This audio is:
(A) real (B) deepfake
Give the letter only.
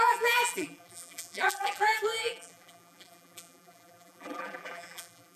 B